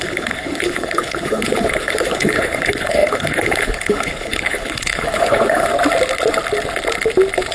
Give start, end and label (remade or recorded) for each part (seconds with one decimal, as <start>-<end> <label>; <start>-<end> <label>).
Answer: 0.0-5.7 remade; 5.7-7.5 recorded